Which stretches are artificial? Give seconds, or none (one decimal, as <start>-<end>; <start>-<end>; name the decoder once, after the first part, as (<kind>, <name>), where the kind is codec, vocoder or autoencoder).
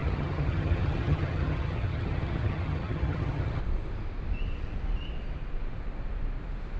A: 0.0-3.6 (vocoder, HiFi-GAN)